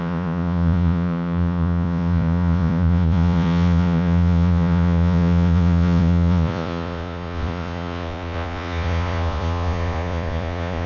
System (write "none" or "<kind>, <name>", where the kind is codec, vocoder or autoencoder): vocoder, Vocos